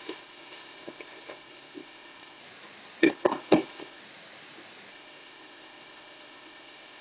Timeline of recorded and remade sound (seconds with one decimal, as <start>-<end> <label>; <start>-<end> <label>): 0.0-2.4 remade; 2.4-3.0 recorded; 3.0-4.0 remade; 4.0-4.9 recorded; 4.9-7.0 remade